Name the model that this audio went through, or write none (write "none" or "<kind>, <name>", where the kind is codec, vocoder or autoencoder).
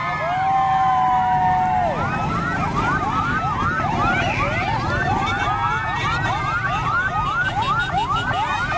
none